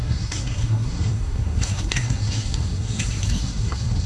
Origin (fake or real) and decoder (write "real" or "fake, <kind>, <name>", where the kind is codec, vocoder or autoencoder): fake, codec, SNAC